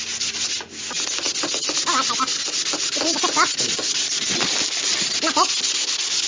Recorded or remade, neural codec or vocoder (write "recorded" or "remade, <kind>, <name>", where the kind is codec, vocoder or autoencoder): recorded